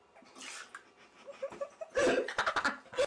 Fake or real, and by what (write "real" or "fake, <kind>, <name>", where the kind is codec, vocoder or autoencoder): real